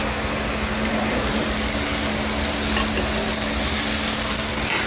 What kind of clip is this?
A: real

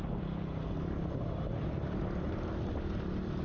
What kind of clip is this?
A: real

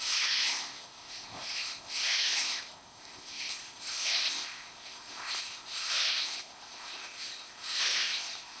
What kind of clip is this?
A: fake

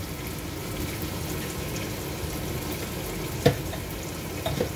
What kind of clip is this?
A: real